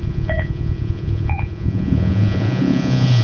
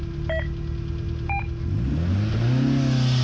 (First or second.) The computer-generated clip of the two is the first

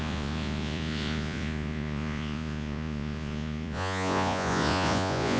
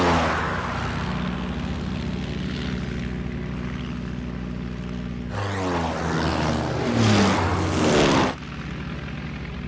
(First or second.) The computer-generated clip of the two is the first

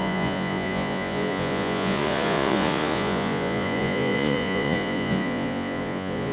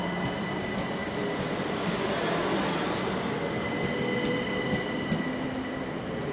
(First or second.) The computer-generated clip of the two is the first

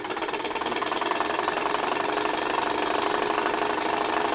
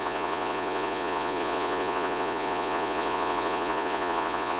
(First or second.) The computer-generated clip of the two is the second